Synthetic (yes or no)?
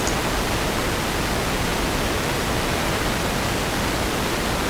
no